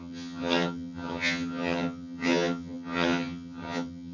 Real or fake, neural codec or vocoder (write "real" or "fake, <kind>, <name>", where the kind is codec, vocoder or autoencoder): fake, vocoder, HiFi-GAN